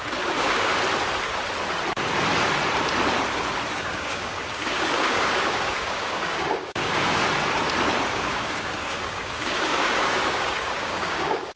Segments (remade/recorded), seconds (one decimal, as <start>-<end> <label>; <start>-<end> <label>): 0.0-0.7 remade; 0.7-3.8 recorded; 3.8-7.2 remade; 7.2-8.1 recorded; 8.1-11.6 remade